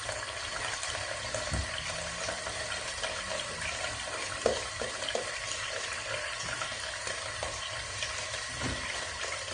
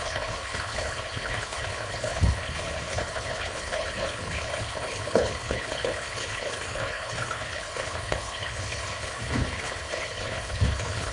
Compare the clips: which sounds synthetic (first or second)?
second